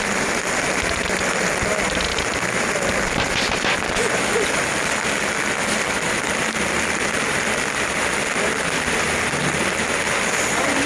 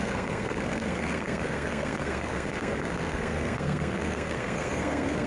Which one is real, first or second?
first